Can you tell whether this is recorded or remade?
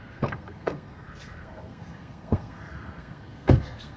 remade